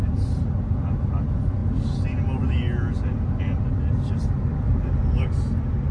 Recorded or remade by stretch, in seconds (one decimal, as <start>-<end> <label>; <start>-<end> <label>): 0.0-5.9 recorded